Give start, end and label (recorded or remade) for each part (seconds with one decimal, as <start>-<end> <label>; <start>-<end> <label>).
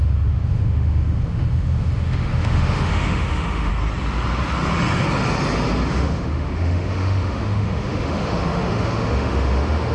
0.0-3.7 remade; 3.7-5.9 recorded; 5.9-9.9 remade